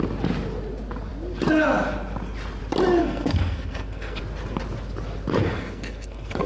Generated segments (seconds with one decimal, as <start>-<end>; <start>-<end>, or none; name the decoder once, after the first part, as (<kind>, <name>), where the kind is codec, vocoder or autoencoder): 3.0-4.2 (codec, SNAC); 5.4-6.5

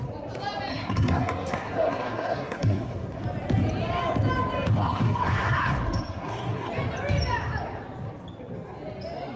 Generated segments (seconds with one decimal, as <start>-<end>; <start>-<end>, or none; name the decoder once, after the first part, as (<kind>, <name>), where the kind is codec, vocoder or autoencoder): 0.7-3.2 (codec, SNAC); 4.7-6.7